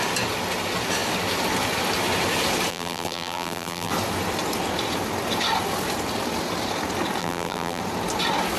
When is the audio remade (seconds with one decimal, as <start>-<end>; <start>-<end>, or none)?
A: 2.7-3.9; 7.2-7.8